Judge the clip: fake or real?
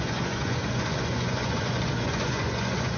fake